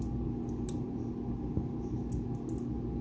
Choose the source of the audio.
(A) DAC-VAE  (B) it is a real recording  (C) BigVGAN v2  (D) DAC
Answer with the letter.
B